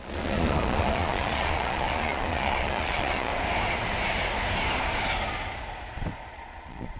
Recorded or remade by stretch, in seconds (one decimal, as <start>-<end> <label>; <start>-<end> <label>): 0.0-3.3 remade; 3.3-6.3 recorded; 6.3-7.0 remade